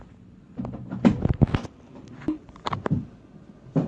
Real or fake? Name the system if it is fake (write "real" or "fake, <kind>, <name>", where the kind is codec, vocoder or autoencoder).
fake, vocoder, BigVGAN v2